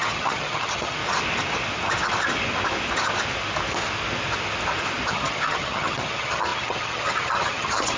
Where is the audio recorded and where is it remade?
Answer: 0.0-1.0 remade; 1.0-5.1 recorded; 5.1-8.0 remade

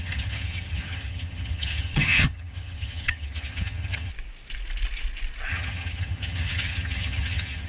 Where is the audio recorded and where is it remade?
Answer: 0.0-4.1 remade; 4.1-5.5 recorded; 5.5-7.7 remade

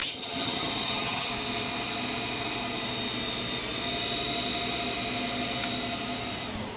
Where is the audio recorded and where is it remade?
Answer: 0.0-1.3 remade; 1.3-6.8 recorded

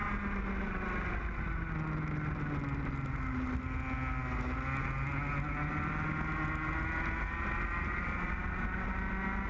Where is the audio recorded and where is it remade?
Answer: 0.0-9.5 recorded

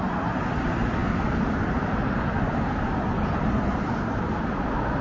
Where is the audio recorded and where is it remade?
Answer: 0.0-5.0 recorded

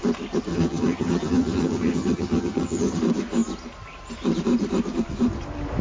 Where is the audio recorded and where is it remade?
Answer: 0.0-0.5 recorded; 0.5-3.0 remade; 3.0-5.8 recorded

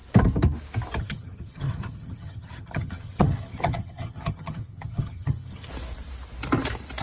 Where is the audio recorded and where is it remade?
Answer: 0.0-1.0 recorded; 1.0-5.7 remade; 5.7-7.0 recorded